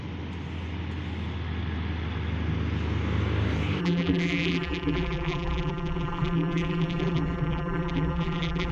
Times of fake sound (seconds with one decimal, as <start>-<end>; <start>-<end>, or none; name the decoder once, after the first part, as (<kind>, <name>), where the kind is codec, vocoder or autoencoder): 3.8-8.7 (vocoder, BigVGAN v2)